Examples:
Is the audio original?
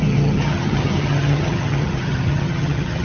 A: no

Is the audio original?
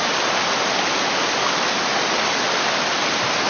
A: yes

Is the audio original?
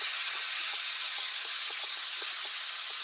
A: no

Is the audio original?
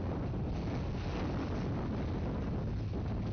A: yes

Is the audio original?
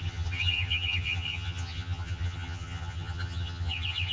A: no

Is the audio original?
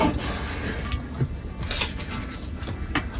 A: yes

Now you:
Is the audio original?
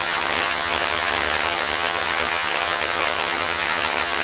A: no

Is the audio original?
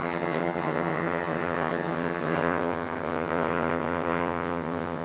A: no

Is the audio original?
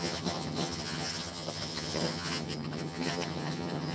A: no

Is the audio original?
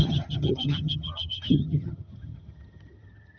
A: no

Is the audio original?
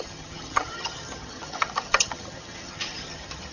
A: no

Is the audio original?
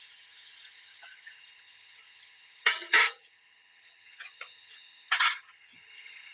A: no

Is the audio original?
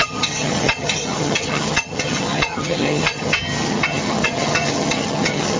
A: no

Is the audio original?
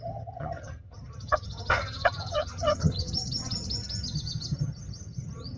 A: no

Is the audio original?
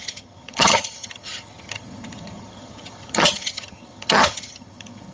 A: no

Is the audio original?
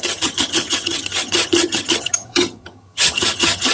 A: no